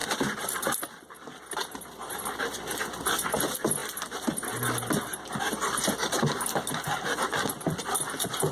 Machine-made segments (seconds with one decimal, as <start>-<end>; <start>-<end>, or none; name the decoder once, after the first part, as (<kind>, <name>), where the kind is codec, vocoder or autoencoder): 0.0-2.4 (vocoder, BigVGAN v2)